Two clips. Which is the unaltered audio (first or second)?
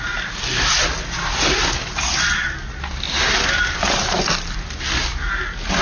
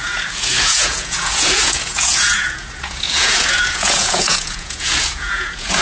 first